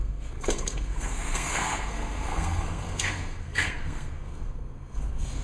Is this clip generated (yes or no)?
yes